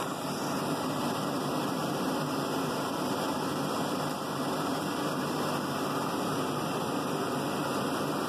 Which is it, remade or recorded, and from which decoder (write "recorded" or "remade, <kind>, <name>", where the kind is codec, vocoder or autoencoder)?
remade, vocoder, BigVGAN v2